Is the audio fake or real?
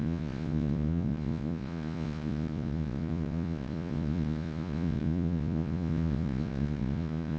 fake